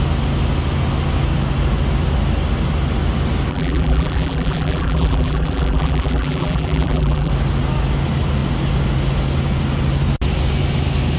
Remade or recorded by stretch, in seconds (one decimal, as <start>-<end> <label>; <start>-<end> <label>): 0.0-3.5 recorded; 3.5-7.3 remade; 7.3-11.2 recorded

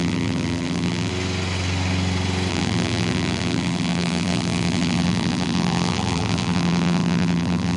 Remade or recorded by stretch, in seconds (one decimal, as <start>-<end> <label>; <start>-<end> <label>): 0.0-1.1 remade; 1.1-2.5 recorded; 2.5-7.8 remade

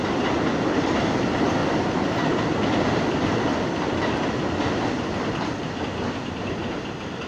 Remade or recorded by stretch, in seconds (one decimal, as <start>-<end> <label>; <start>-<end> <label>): 0.0-1.6 remade; 1.6-2.4 recorded; 2.4-7.3 remade

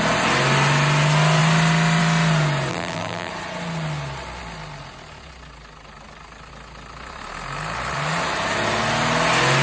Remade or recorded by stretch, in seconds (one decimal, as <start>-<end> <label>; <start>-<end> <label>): 0.0-2.7 recorded; 2.7-3.3 remade; 3.3-9.6 recorded

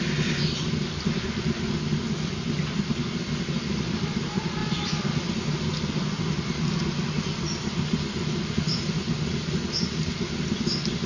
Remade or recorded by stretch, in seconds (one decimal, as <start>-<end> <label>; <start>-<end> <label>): 0.0-11.1 recorded